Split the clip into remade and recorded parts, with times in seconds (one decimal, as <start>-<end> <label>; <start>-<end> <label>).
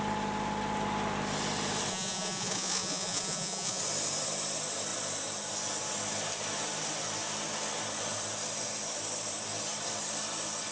0.0-1.9 recorded; 1.9-3.8 remade; 3.8-10.7 recorded